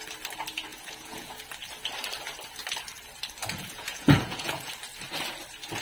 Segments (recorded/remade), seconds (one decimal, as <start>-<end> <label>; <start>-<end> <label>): 0.0-0.7 recorded; 0.7-1.3 remade; 1.3-3.4 recorded; 3.4-4.7 remade; 4.7-5.8 recorded

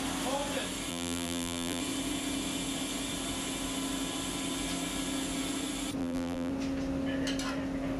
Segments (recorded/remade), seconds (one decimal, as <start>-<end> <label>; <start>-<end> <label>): 0.0-0.9 recorded; 0.9-1.8 remade; 1.8-6.0 recorded; 6.0-6.5 remade; 6.5-8.0 recorded

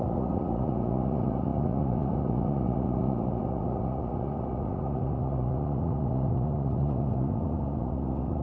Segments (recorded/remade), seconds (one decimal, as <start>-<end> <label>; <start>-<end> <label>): 0.0-8.4 remade

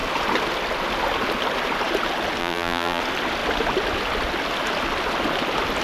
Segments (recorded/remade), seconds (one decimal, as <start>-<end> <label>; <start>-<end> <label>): 0.0-2.4 recorded; 2.4-3.0 remade; 3.0-5.8 recorded

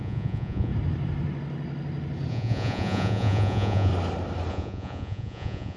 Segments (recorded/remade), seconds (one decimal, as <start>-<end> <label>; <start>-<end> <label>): 0.0-0.7 remade; 0.7-2.3 recorded; 2.3-3.9 remade; 3.9-4.5 recorded; 4.5-5.8 remade

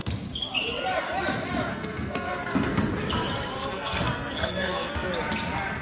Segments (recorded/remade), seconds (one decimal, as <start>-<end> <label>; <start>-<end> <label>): 0.0-1.7 recorded; 1.7-2.9 remade; 2.9-3.7 recorded; 3.7-5.1 remade; 5.1-5.8 recorded

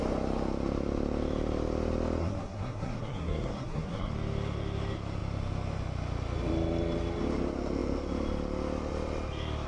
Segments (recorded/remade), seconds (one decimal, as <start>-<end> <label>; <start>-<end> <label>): 0.0-2.2 recorded; 2.2-4.1 remade; 4.1-9.7 recorded